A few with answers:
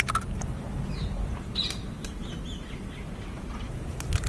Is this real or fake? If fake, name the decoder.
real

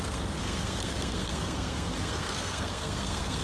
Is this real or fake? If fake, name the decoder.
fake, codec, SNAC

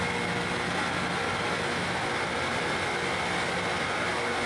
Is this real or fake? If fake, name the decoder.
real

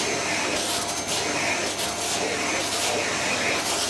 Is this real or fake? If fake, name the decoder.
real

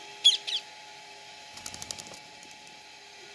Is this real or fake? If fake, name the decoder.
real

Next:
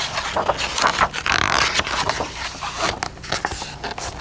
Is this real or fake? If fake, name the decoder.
real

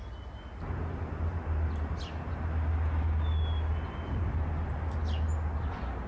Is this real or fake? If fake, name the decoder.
real